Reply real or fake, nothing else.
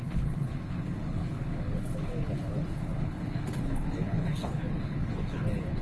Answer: fake